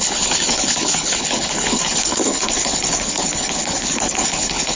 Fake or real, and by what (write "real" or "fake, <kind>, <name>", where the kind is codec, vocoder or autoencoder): fake, codec, HILCodec